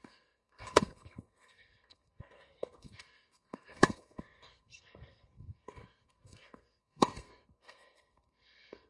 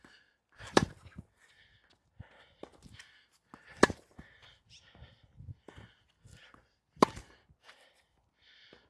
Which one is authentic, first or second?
second